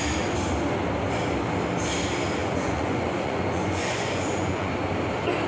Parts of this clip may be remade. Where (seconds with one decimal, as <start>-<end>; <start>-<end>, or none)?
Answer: 2.4-4.7